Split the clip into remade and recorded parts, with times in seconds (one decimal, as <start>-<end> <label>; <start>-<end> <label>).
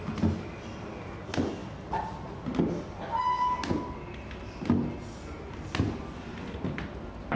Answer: 0.0-7.4 recorded